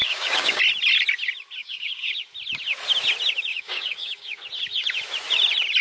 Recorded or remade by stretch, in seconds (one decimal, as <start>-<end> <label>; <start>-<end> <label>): 0.0-0.6 remade; 0.6-1.6 recorded; 1.6-2.1 remade; 2.1-3.5 recorded; 3.5-4.4 remade; 4.4-5.8 recorded